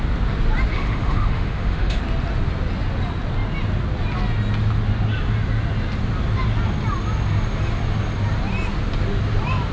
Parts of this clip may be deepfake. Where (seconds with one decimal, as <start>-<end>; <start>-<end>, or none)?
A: 0.7-2.0